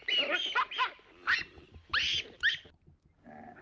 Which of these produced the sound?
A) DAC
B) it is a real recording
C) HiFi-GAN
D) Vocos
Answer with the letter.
B